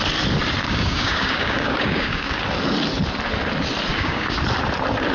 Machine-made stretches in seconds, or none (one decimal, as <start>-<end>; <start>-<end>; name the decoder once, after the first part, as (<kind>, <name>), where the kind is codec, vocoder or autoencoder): 0.6-2.4 (codec, DAC); 3.9-4.4